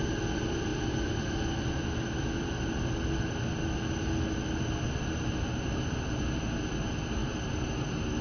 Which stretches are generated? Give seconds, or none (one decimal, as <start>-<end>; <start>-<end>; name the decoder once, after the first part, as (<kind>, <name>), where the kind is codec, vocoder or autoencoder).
7.2-8.2 (vocoder, BigVGAN v2)